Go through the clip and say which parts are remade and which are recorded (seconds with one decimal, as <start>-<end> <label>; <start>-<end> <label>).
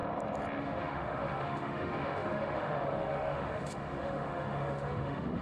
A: 0.0-0.6 recorded; 0.6-5.4 remade